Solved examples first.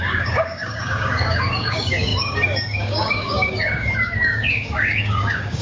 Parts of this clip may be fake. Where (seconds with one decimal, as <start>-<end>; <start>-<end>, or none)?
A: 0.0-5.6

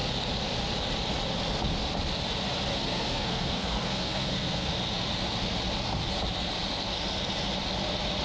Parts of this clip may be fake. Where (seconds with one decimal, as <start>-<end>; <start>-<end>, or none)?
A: 2.7-4.7

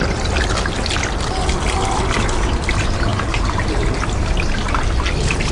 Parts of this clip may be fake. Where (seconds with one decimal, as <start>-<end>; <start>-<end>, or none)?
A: 3.1-4.7

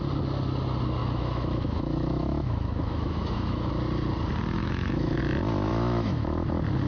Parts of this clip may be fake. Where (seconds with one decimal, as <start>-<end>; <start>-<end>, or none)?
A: 1.0-3.7; 4.6-5.2; 5.7-6.5

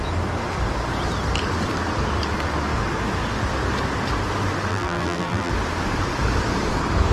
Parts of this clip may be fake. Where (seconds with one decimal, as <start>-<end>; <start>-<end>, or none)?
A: 4.7-5.5